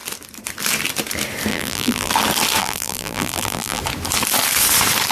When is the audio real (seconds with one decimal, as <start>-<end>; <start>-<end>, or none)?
0.0-1.5; 2.1-2.6; 3.8-5.1